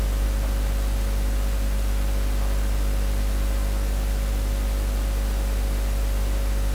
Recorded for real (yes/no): yes